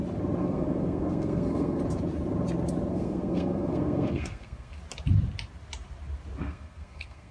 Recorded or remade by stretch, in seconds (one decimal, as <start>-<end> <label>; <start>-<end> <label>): 0.0-0.4 recorded; 0.4-1.8 remade; 1.8-2.9 recorded; 2.9-4.8 remade; 4.8-6.4 recorded; 6.4-7.3 remade